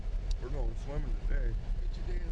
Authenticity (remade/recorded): recorded